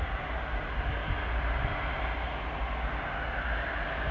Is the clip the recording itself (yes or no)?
yes